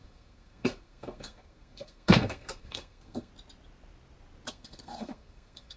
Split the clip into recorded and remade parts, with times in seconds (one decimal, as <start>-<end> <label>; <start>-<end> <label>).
0.0-3.3 remade; 3.3-4.5 recorded; 4.5-5.8 remade